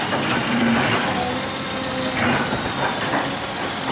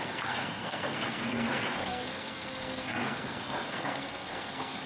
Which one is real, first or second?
first